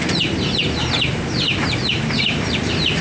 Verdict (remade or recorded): remade